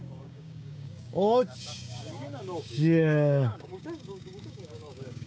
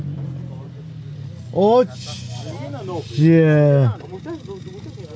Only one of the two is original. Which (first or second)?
second